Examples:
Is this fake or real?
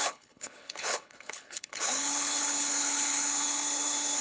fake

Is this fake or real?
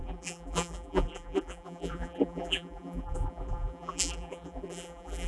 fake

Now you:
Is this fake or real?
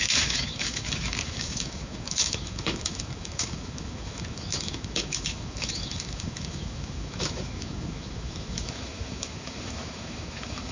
fake